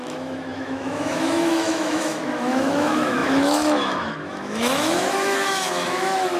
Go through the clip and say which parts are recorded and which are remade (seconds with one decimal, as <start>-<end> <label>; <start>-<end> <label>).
0.0-6.4 remade